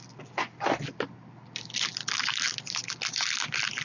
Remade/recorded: recorded